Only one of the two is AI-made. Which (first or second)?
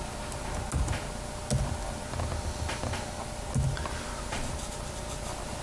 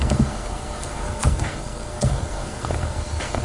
second